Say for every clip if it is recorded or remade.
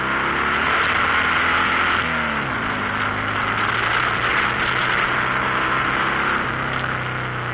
recorded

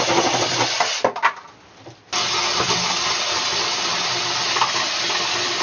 recorded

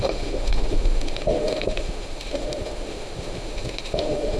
remade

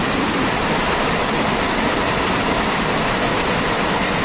recorded